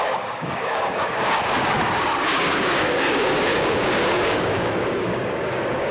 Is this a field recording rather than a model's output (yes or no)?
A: no